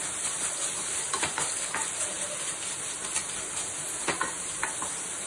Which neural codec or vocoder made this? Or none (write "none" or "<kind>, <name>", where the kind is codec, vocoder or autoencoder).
none